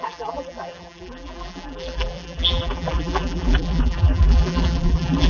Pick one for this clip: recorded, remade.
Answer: remade